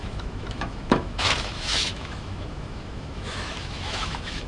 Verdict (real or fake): fake